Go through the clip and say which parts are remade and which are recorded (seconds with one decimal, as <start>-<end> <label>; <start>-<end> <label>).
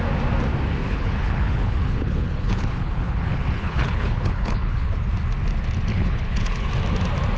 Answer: 0.0-0.8 recorded; 0.8-4.9 remade; 4.9-5.9 recorded; 5.9-6.7 remade; 6.7-7.4 recorded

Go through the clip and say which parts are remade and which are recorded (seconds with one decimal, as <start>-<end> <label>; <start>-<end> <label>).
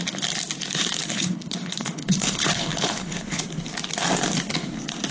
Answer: 0.0-1.1 recorded; 1.1-3.4 remade; 3.4-5.1 recorded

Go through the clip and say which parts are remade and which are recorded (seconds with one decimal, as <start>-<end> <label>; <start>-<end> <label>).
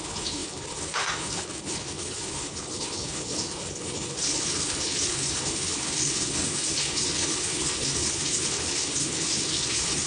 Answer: 0.0-10.1 remade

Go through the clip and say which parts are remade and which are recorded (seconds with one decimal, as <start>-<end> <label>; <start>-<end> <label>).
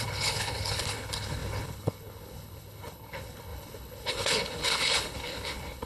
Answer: 0.0-5.9 remade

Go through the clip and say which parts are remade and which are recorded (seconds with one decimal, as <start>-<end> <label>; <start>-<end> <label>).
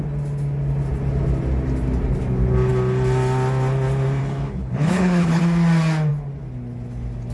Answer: 0.0-4.2 recorded; 4.2-5.4 remade; 5.4-7.3 recorded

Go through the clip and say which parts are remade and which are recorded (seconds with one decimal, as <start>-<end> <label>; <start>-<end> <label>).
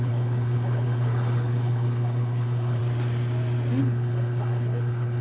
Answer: 0.0-2.8 remade; 2.8-3.8 recorded; 3.8-5.2 remade